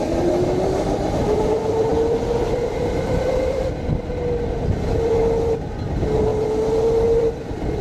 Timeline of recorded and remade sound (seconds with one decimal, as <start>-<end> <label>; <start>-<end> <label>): 0.0-6.3 remade; 6.3-6.9 recorded; 6.9-7.8 remade